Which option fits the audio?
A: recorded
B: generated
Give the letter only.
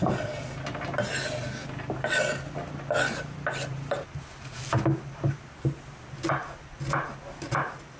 A